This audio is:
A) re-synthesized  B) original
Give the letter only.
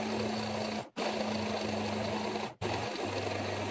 B